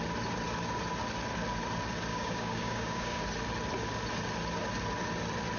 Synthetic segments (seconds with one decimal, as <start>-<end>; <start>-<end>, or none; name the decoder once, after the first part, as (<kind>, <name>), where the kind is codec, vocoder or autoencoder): 2.1-3.2 (codec, DAC)